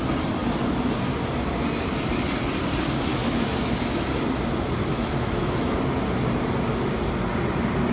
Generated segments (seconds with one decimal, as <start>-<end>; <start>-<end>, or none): 3.1-4.1; 4.8-5.8